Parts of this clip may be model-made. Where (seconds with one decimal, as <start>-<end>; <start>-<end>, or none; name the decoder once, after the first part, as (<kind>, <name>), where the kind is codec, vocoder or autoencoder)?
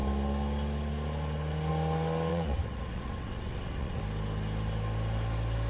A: 2.3-4.0 (vocoder, WaveNeXt)